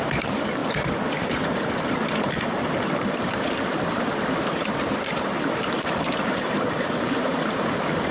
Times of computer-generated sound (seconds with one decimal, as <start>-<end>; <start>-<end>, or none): 0.0-8.1